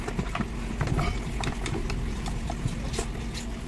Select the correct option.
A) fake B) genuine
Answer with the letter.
B